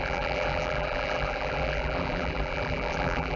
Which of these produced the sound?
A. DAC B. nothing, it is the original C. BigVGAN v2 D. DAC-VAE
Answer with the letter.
C